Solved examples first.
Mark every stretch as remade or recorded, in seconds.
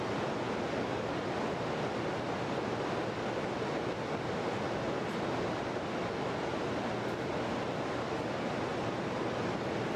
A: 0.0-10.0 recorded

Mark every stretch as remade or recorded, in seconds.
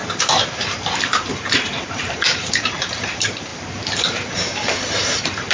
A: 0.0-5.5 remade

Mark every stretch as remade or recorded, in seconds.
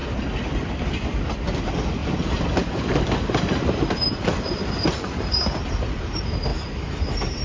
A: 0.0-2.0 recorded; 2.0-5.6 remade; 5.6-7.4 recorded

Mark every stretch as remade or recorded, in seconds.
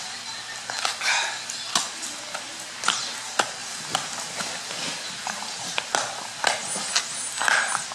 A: 0.0-7.9 recorded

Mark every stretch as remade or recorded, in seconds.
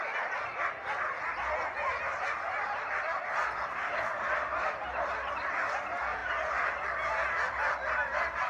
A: 0.0-8.5 recorded